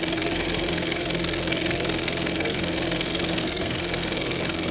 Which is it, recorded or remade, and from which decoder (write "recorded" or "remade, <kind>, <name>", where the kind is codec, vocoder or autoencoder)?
remade, codec, SNAC